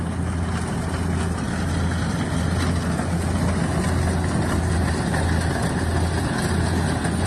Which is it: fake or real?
real